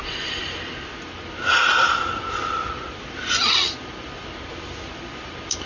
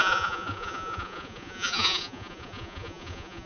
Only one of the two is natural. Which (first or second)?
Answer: first